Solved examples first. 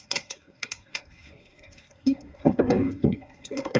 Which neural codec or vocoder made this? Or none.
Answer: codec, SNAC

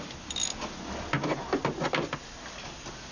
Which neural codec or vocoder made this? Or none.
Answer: none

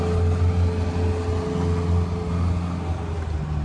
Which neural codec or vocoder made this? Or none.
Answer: none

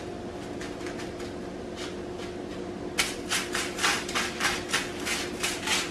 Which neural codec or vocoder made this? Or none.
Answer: none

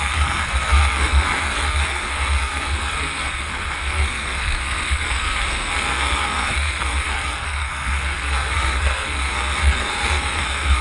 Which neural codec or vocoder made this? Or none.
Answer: codec, SNAC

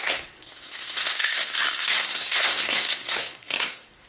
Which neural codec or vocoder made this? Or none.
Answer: codec, SNAC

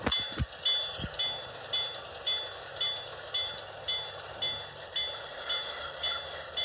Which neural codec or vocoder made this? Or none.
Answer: none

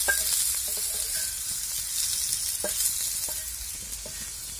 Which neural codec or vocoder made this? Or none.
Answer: none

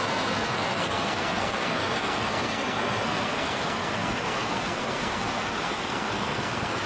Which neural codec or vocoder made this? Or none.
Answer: codec, SNAC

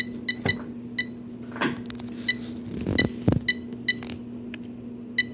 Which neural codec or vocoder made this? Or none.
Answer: none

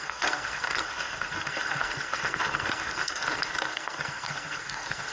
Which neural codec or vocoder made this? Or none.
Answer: codec, SNAC